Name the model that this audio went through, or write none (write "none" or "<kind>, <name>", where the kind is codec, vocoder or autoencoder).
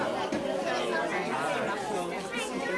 none